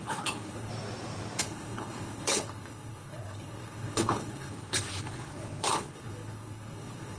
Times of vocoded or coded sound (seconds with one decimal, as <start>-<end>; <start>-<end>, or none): 0.0-0.7; 1.4-7.2